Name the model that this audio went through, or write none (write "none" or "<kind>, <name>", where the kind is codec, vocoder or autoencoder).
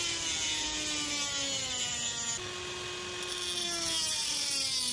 none